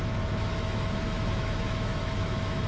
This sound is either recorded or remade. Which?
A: remade